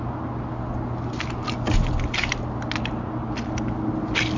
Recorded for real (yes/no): yes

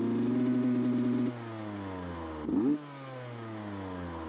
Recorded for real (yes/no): yes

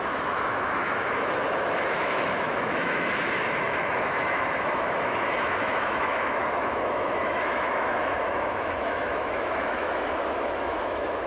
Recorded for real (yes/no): no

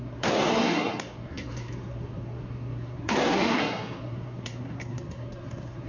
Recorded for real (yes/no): no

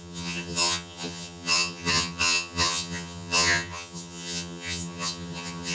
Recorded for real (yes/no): no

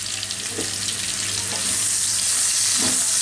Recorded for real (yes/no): yes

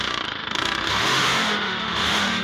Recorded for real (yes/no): no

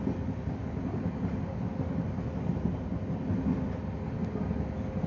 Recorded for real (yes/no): yes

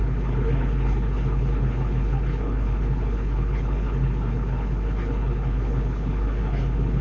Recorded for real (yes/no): no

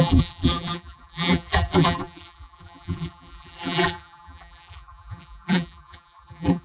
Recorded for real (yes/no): no